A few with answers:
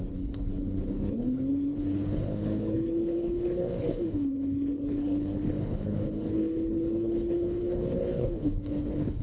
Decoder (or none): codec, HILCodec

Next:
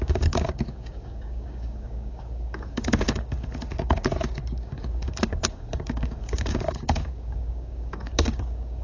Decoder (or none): codec, DAC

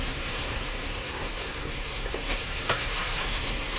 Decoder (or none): codec, SNAC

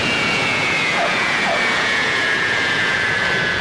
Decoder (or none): vocoder, Vocos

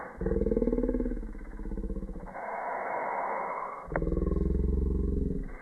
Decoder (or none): autoencoder, DAC-VAE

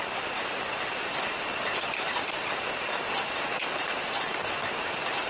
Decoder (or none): vocoder, BigVGAN v2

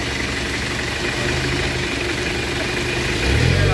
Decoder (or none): none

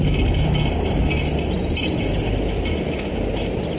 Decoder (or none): none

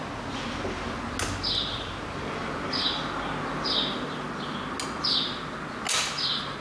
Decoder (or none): none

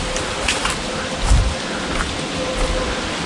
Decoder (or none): none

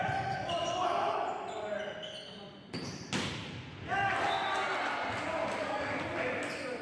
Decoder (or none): none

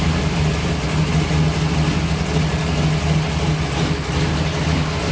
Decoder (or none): none